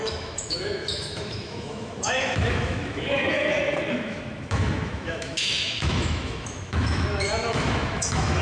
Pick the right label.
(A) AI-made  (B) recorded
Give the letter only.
A